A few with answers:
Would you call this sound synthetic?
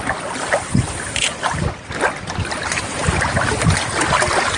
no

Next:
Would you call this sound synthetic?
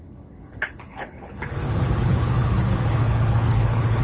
yes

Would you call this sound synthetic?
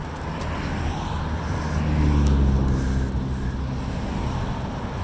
no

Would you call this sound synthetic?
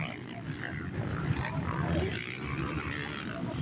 no